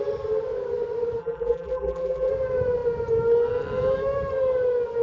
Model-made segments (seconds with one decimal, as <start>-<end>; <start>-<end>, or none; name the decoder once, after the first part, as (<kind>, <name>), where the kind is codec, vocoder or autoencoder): 1.2-2.3 (vocoder, BigVGAN v2)